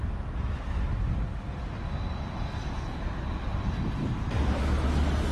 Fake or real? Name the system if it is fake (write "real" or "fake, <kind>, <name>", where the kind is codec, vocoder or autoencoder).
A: real